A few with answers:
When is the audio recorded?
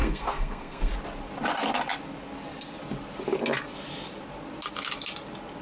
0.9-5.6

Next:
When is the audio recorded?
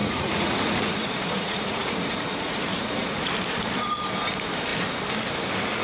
3.3-5.8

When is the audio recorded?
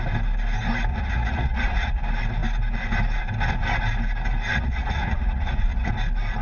0.0-0.9; 2.0-4.5; 5.9-6.4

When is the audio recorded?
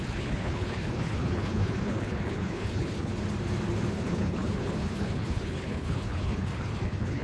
3.1-3.9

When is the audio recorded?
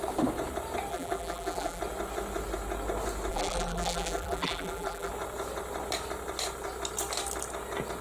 0.0-0.9; 1.8-3.3; 5.1-8.0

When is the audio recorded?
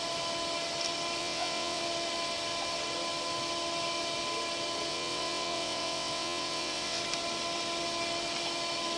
0.0-1.2; 1.8-4.9; 7.0-9.0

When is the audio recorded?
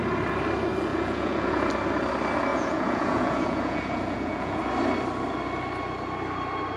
0.0-0.9; 1.7-2.5; 4.6-6.8